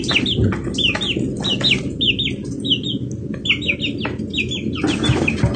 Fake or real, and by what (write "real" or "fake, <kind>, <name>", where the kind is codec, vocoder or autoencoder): real